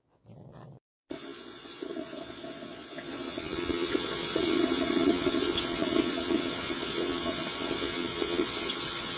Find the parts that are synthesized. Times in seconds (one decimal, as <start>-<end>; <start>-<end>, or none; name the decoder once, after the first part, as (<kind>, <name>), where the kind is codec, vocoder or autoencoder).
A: 0.0-9.2 (vocoder, Vocos)